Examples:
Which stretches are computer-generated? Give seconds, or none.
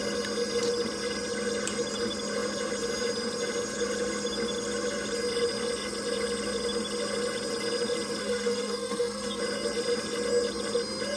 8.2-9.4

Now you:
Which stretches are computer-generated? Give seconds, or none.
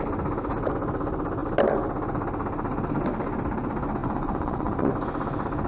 4.0-4.9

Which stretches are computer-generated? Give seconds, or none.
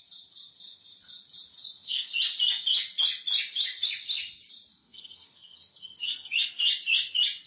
1.6-2.1; 4.7-6.3